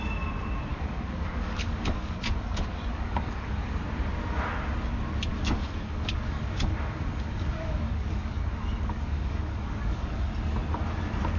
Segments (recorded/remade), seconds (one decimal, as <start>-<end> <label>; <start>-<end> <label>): 0.0-0.7 recorded; 0.7-3.8 remade; 3.8-5.3 recorded; 5.3-10.3 remade; 10.3-11.4 recorded